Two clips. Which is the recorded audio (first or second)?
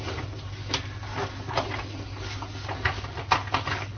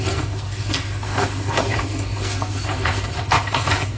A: first